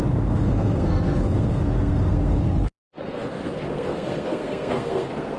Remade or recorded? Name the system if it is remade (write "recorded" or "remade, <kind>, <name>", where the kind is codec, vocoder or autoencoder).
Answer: remade, codec, SNAC